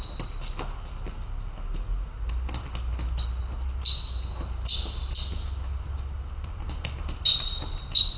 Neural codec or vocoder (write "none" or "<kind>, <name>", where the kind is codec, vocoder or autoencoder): none